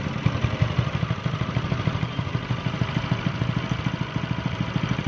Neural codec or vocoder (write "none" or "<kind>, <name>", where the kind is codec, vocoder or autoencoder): none